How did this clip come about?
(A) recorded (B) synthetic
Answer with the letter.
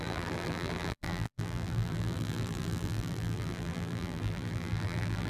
B